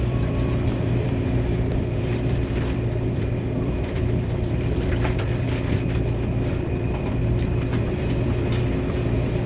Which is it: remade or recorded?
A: remade